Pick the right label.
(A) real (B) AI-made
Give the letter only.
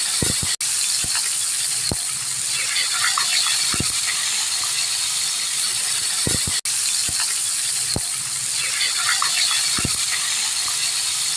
A